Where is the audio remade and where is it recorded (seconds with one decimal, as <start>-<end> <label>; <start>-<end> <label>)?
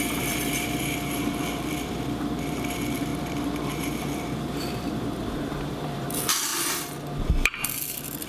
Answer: 0.0-6.5 remade; 6.5-7.3 recorded; 7.3-8.3 remade